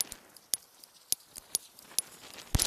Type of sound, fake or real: real